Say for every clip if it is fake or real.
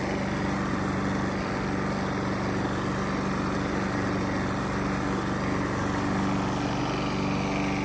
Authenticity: real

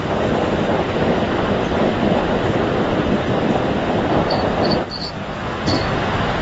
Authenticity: real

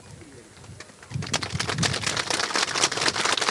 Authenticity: real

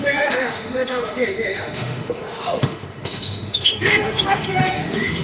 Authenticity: fake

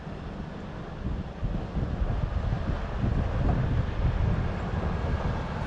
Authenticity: real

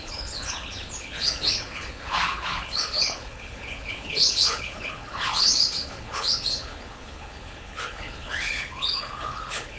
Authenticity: fake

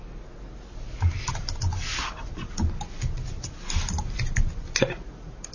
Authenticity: real